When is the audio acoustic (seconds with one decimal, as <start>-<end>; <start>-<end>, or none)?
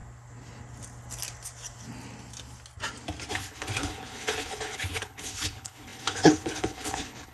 0.0-3.3